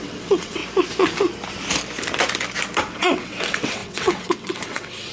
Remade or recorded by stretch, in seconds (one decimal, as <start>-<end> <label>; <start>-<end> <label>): 0.0-0.6 remade; 0.6-2.8 recorded; 2.8-5.1 remade